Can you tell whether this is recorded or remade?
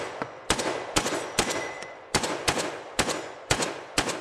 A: remade